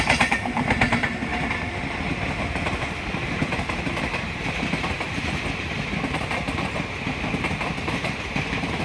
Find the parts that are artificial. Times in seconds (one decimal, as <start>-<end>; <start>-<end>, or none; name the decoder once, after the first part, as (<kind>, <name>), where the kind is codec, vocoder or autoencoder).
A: 0.0-8.8 (vocoder, BigVGAN v2)